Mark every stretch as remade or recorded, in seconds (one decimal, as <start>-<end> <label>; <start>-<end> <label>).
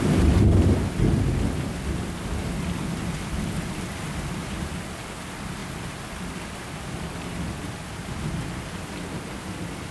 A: 0.0-9.9 recorded